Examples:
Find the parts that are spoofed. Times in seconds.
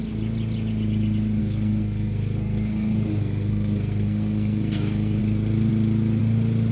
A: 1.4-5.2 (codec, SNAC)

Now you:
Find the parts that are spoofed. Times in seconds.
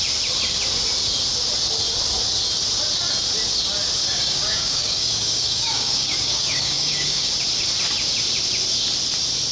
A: 4.0-7.3 (codec, DAC)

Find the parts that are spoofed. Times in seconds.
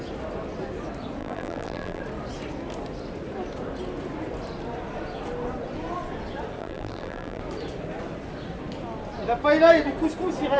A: 1.2-2.0 (vocoder, BigVGAN v2); 6.6-7.4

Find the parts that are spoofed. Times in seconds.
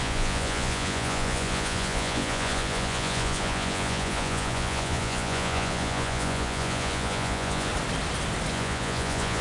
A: 0.0-7.7 (vocoder, Vocos); 8.5-9.4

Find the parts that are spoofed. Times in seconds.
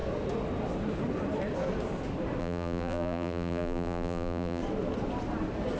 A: 2.4-4.6 (vocoder, BigVGAN v2)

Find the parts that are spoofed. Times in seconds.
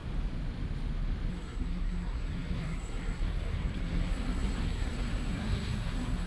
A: 1.3-6.3 (codec, SNAC)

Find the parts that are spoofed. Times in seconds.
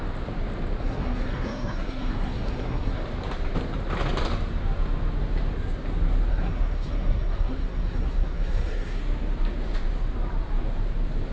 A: 0.8-3.0 (codec, SNAC); 6.3-9.0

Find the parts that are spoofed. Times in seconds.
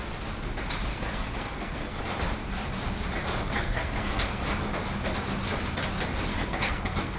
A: 0.9-2.0 (codec, SNAC); 3.4-4.4; 6.3-7.2